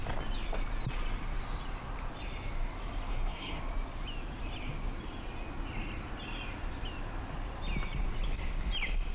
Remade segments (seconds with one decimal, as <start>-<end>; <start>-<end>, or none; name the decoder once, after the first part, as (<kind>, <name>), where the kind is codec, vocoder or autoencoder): 3.1-3.6 (codec, SNAC)